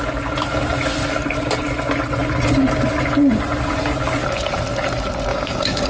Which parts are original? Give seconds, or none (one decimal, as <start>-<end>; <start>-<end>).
0.0-5.3